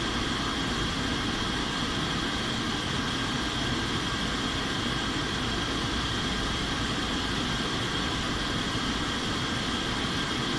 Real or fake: fake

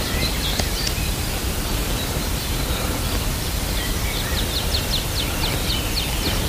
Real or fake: real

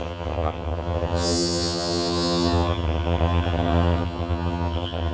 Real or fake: fake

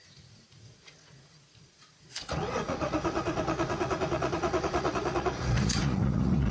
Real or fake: fake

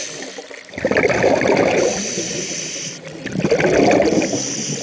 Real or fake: real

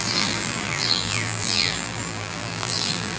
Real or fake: fake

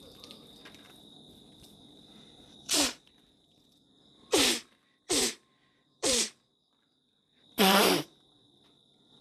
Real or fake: fake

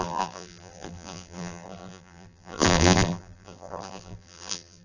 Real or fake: fake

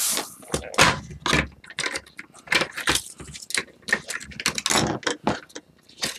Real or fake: real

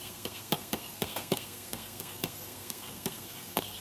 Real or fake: fake